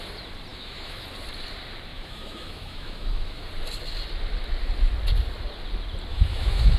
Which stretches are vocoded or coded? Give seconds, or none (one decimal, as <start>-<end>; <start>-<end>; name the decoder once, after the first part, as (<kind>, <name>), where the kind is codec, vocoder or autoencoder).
0.5-1.0 (autoencoder, DAC-VAE); 1.9-3.5; 6.1-6.8